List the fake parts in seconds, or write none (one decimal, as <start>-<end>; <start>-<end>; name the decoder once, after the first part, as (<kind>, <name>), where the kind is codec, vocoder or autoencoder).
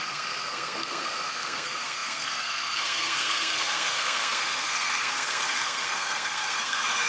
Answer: 0.0-7.1 (codec, SNAC)